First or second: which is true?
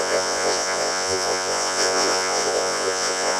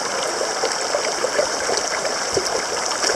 second